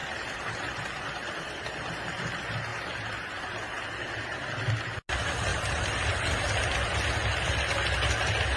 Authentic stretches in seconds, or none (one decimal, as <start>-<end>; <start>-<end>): 2.3-2.7; 4.1-5.5; 6.6-8.6